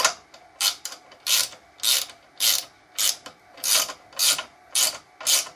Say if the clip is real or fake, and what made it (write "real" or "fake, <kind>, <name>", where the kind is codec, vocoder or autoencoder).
real